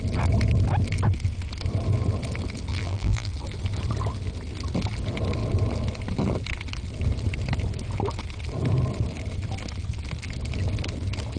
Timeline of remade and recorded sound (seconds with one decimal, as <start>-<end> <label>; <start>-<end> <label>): 0.0-2.7 recorded; 2.7-3.3 remade; 3.3-11.4 recorded